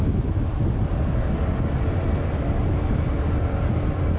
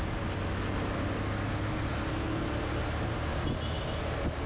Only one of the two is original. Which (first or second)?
second